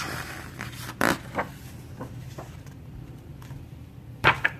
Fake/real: fake